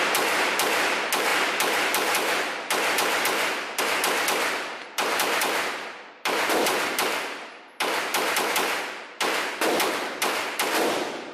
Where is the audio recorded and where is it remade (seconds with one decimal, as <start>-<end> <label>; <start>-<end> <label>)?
0.0-11.3 recorded